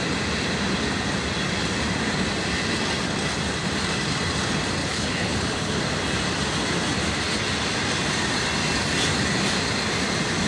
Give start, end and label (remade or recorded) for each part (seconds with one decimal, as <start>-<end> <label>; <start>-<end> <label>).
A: 0.0-4.8 recorded; 4.8-5.8 remade; 5.8-10.5 recorded